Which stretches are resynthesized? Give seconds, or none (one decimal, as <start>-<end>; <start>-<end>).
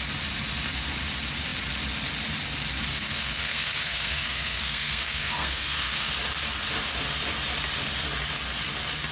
2.9-6.1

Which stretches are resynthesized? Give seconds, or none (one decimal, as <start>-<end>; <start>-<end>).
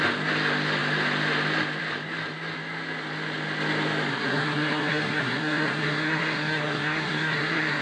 4.1-7.8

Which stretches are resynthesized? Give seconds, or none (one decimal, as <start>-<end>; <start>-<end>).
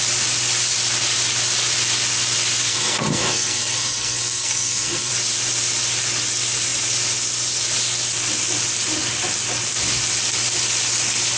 2.7-5.1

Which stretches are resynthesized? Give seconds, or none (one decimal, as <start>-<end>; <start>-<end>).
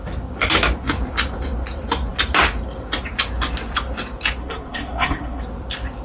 4.4-5.4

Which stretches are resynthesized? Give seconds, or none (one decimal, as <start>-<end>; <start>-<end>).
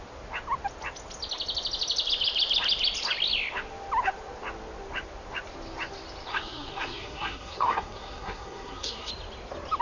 6.3-9.1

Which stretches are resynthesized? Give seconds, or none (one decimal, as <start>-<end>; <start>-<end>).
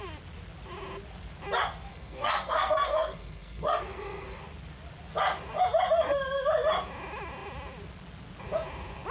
1.9-4.4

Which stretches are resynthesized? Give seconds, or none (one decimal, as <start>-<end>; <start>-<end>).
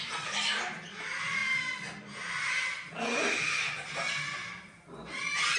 none